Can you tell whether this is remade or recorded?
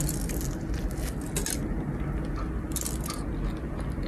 recorded